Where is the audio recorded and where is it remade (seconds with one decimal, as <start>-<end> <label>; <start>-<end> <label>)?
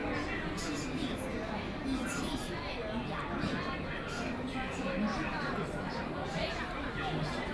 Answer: 0.0-5.3 recorded; 5.3-6.9 remade; 6.9-7.5 recorded